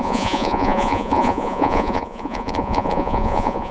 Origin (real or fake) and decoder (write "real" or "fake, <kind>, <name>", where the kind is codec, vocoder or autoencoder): fake, vocoder, Vocos